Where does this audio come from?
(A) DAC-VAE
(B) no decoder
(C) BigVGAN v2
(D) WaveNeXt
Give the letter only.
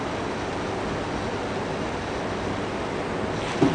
B